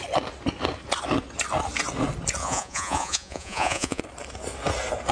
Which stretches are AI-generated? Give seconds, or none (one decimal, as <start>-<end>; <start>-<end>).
2.4-4.0

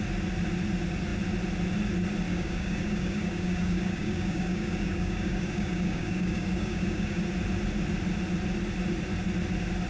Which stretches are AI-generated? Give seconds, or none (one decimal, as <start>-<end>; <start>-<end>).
2.3-7.2

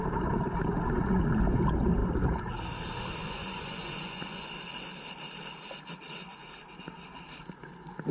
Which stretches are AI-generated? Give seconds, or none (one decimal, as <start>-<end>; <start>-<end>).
3.2-4.5